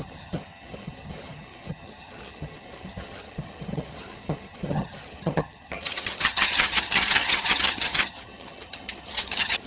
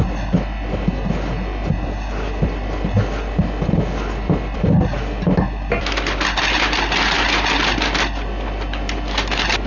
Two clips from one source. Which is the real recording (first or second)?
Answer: second